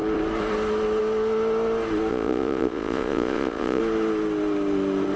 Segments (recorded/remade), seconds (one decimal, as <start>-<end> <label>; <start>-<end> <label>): 0.0-2.1 recorded; 2.1-3.8 remade; 3.8-5.2 recorded